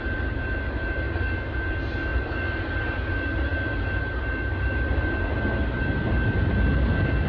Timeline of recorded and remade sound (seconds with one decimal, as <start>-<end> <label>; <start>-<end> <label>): 0.0-7.3 recorded